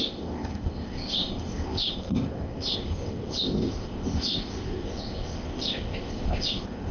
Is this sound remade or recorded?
remade